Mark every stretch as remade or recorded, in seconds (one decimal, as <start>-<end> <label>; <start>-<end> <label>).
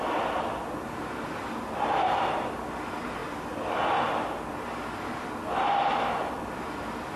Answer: 0.0-7.2 recorded